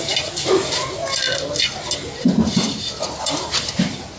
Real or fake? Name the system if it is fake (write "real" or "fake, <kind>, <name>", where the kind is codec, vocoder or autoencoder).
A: real